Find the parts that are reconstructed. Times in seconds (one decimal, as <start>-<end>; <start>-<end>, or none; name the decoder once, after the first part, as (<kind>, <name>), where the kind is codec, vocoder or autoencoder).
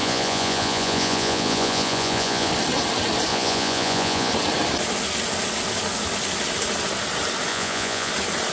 0.0-2.5 (vocoder, Vocos); 3.3-4.3; 7.5-8.1